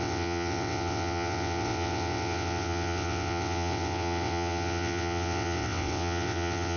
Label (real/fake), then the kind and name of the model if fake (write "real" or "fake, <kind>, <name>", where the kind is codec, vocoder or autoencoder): fake, vocoder, WaveNeXt